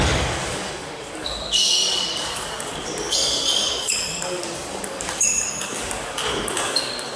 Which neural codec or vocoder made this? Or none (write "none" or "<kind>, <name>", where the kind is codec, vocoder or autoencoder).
codec, DAC